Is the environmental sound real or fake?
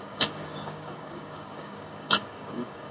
fake